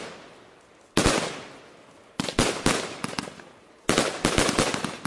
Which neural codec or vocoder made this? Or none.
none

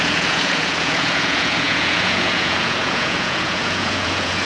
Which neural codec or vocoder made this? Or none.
vocoder, Vocos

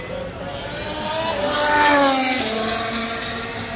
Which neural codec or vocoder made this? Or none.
none